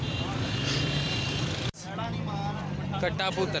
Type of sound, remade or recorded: remade